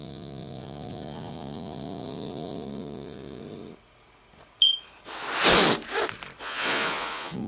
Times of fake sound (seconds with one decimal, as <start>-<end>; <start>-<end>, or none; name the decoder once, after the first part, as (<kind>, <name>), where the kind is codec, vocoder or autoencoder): 0.0-3.4 (vocoder, Vocos); 6.4-7.5